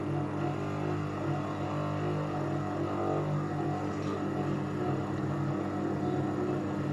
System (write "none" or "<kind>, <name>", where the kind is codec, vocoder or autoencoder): none